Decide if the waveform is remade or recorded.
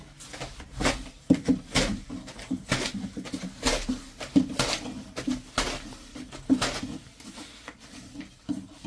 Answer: recorded